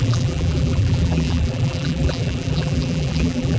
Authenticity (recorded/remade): remade